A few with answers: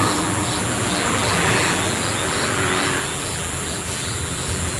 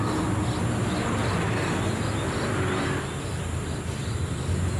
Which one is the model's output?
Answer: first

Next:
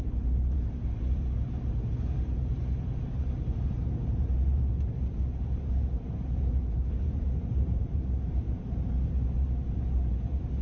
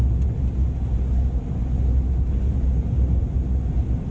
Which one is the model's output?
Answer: first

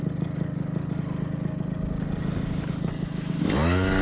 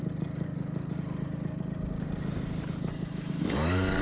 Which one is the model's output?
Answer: second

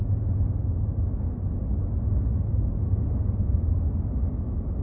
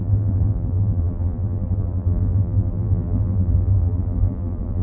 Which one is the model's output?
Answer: second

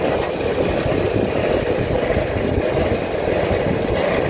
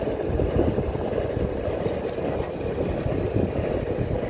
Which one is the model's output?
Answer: first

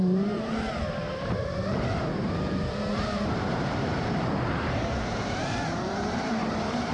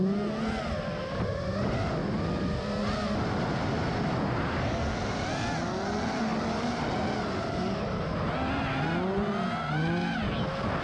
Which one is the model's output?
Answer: first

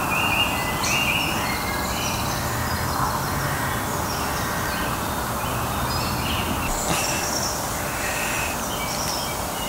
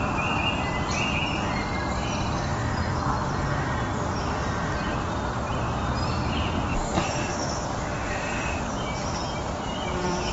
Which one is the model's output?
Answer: second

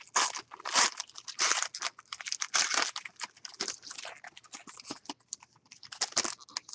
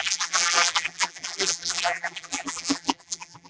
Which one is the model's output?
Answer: second